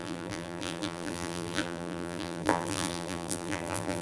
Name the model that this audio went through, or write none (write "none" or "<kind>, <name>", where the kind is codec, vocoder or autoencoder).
vocoder, BigVGAN v2